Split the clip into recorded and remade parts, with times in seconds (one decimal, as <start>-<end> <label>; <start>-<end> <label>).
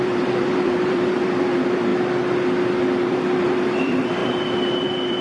0.0-1.9 remade; 1.9-2.7 recorded; 2.7-4.2 remade; 4.2-4.7 recorded; 4.7-5.2 remade